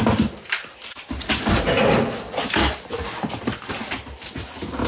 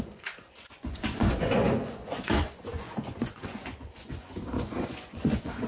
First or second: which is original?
first